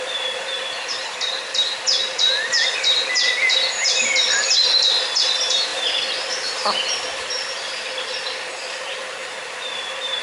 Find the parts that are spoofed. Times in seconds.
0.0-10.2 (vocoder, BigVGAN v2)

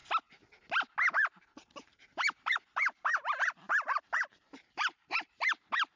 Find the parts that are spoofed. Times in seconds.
1.1-6.0 (vocoder, BigVGAN v2)

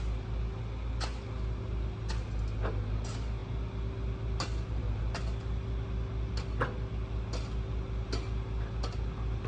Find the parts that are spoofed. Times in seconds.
none

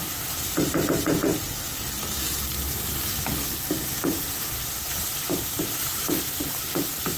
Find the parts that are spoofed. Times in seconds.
0.0-1.3 (vocoder, BigVGAN v2); 2.7-3.3; 4.0-7.2

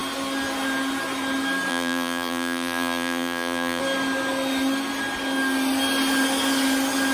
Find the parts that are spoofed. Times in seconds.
1.7-3.8 (vocoder, BigVGAN v2)